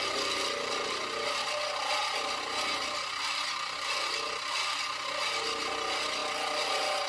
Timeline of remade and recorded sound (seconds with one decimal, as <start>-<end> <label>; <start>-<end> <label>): 0.0-7.1 recorded